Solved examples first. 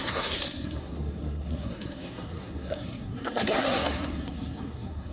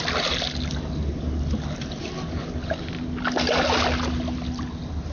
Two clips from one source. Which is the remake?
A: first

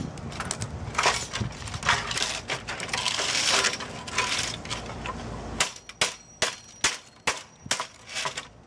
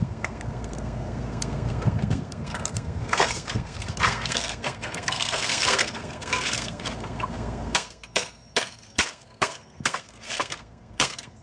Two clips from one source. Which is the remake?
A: second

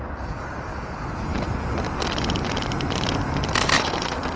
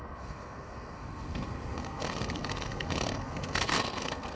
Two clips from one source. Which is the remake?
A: second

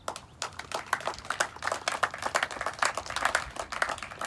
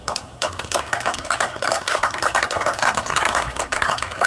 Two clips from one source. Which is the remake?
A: second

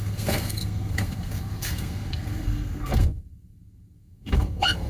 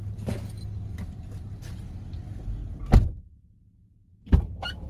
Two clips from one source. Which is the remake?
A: first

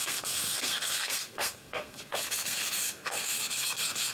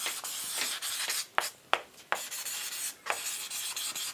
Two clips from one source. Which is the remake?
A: first